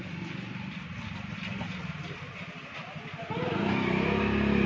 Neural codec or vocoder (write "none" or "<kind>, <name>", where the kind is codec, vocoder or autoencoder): none